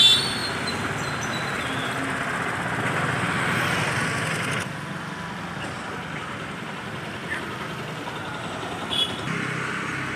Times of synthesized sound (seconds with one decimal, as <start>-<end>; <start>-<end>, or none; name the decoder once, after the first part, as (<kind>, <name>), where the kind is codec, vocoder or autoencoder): none